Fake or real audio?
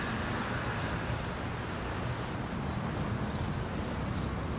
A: real